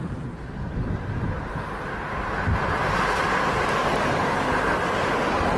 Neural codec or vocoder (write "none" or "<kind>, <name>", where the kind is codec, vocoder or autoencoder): none